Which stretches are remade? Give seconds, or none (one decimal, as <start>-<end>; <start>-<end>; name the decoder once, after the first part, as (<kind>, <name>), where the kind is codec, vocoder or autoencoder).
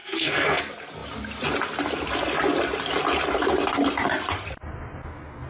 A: 0.0-0.6 (codec, SNAC)